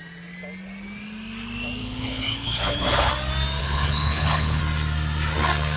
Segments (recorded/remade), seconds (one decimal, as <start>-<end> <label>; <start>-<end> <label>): 0.0-1.8 recorded; 1.8-3.1 remade; 3.1-3.6 recorded; 3.6-4.6 remade; 4.6-5.8 recorded